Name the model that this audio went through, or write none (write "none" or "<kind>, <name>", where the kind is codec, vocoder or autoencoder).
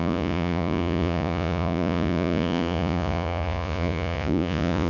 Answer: vocoder, Vocos